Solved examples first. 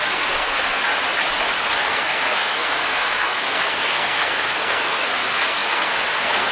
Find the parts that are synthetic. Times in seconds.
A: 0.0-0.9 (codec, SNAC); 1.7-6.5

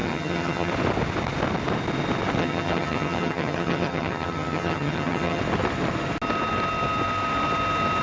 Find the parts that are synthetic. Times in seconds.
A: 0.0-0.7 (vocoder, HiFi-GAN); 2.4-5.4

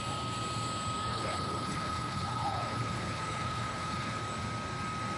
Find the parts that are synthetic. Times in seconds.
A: 1.1-4.2 (codec, HILCodec)

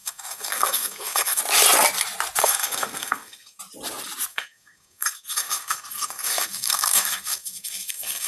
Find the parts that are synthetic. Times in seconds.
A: 0.0-1.4 (codec, SNAC); 2.4-3.6; 4.3-8.3

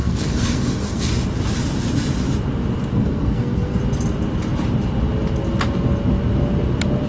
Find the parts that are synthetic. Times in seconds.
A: 0.0-1.1 (codec, SNAC); 2.9-3.8

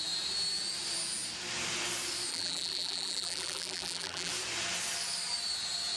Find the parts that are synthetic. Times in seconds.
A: 2.3-4.3 (vocoder, BigVGAN v2)

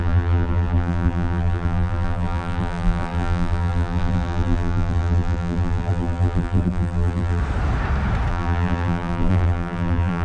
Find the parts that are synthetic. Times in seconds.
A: 0.0-7.4 (vocoder, BigVGAN v2); 8.3-10.2